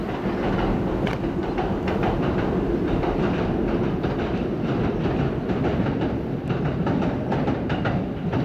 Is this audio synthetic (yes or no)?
no